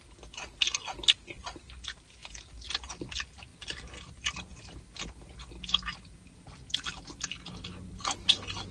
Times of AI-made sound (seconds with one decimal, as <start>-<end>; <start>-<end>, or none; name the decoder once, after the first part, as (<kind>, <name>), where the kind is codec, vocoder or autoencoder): none